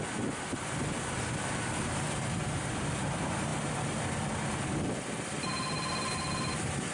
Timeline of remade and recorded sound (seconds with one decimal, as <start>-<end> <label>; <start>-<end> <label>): 0.0-6.9 recorded